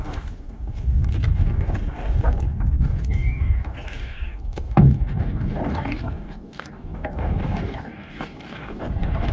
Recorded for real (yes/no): no